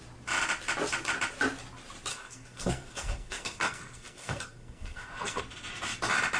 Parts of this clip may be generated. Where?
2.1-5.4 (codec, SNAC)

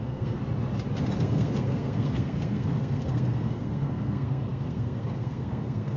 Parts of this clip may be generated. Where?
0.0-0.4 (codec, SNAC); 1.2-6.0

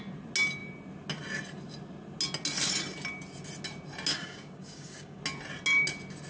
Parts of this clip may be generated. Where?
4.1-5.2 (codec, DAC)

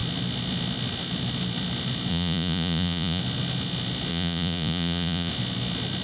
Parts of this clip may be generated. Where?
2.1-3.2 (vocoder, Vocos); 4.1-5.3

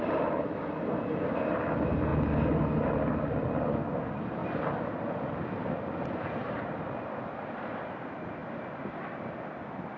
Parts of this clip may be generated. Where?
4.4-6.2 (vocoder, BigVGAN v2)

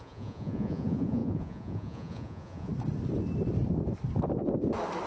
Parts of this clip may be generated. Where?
0.0-2.7 (vocoder, Vocos)

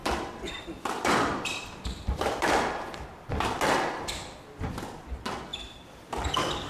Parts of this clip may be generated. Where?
0.0-3.3 (vocoder, BigVGAN v2); 5.5-6.1

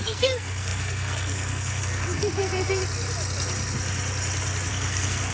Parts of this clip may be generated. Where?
0.0-2.8 (codec, SNAC); 4.7-5.3